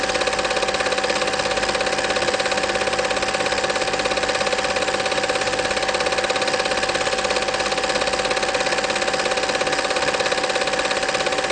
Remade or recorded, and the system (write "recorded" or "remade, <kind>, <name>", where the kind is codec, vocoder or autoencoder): recorded